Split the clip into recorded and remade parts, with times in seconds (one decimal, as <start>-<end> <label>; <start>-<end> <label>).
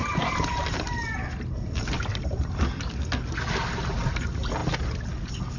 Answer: 0.0-5.6 recorded